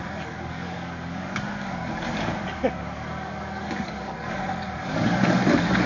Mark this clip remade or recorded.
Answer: remade